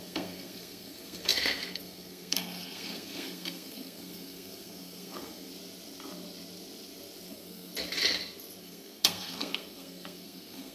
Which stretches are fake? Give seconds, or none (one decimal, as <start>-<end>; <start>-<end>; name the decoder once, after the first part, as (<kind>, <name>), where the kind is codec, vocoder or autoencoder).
0.0-5.5 (codec, SNAC); 7.3-7.7; 8.6-10.7